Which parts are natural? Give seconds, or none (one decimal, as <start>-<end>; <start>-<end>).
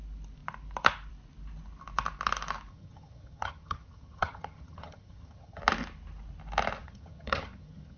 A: 0.0-2.7; 5.6-6.8